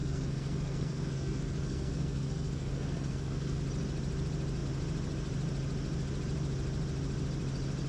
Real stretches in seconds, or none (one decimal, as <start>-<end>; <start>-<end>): 3.6-7.9